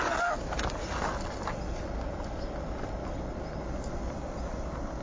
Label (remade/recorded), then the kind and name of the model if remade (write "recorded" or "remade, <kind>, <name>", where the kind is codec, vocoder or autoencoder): recorded